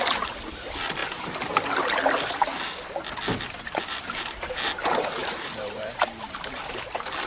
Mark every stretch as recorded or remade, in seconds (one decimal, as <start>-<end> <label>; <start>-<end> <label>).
0.0-5.2 recorded; 5.2-6.6 remade; 6.6-7.3 recorded